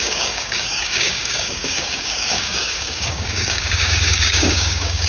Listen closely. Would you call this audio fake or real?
fake